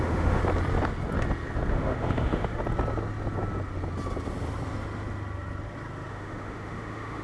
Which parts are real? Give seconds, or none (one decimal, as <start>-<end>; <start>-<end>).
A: 0.4-1.7; 2.6-6.1